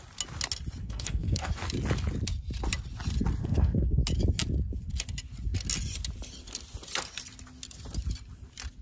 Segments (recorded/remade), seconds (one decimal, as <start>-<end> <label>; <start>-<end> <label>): 0.0-0.8 recorded; 0.8-1.5 remade; 1.5-3.4 recorded; 3.4-4.0 remade; 4.0-8.8 recorded